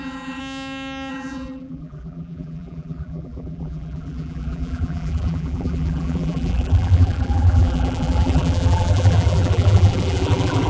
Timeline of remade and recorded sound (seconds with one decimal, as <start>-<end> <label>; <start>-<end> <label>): 0.0-0.4 remade; 0.4-1.1 recorded; 1.1-10.7 remade